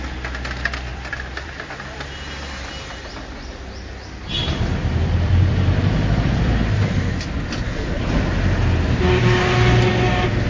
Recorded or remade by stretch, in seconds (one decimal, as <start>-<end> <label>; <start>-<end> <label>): 0.0-0.9 recorded; 0.9-1.7 remade; 1.7-4.8 recorded; 4.8-8.1 remade; 8.1-10.5 recorded